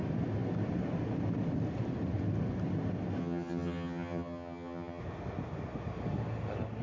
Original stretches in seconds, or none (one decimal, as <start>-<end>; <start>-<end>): 0.0-3.2; 5.0-6.8